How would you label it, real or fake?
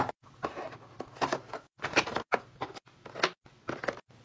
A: real